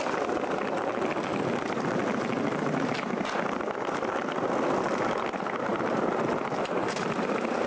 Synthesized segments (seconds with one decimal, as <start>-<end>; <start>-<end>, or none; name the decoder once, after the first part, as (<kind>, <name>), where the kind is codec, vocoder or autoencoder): none